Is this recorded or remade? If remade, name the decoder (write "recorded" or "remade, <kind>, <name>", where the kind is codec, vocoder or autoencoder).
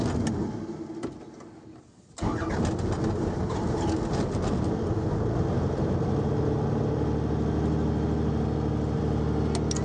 recorded